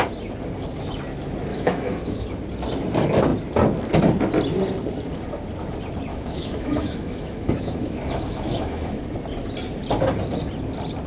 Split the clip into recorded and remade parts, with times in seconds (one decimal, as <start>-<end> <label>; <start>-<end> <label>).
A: 0.0-1.5 recorded; 1.5-2.4 remade; 2.4-6.1 recorded; 6.1-9.0 remade; 9.0-11.1 recorded